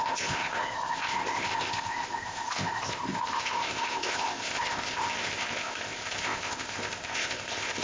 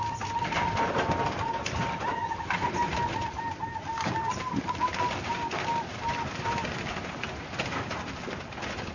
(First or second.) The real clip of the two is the second